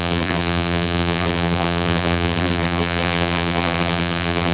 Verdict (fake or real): fake